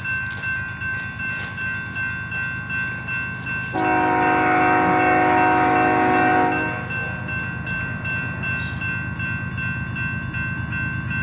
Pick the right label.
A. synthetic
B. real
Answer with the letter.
B